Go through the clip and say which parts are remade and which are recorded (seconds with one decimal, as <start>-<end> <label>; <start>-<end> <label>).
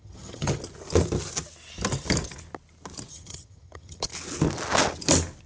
0.0-0.6 remade; 0.6-3.1 recorded; 3.1-4.1 remade; 4.1-5.5 recorded